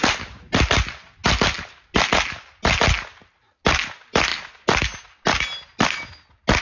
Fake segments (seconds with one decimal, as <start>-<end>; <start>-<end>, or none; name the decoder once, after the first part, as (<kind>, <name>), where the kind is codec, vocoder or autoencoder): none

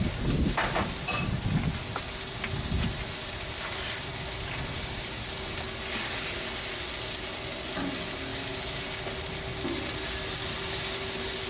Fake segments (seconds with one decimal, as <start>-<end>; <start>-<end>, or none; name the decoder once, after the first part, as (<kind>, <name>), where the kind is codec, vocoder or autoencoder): none

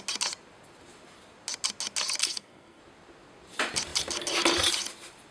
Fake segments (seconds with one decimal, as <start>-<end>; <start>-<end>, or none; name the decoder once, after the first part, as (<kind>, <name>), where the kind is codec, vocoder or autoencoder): 2.2-2.8 (codec, SNAC)

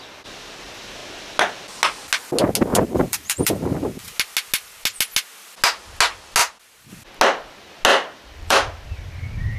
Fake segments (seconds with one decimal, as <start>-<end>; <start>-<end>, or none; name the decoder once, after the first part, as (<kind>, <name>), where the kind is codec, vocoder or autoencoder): 2.7-4.2 (vocoder, BigVGAN v2); 7.9-9.6

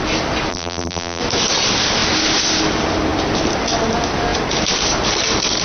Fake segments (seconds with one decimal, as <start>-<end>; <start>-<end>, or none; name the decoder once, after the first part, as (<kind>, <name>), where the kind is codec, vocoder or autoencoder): 0.5-1.2 (vocoder, BigVGAN v2)

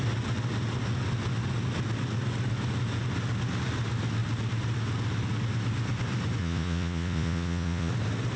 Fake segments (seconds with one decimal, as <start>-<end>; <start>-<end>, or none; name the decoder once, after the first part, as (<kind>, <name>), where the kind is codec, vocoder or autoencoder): 6.4-7.9 (vocoder, Vocos)